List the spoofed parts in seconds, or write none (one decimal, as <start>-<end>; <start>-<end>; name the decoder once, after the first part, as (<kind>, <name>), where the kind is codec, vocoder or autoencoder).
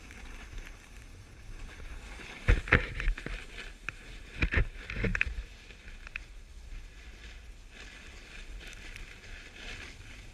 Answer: none